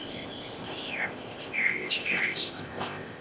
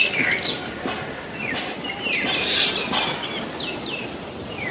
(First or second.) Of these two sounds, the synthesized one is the first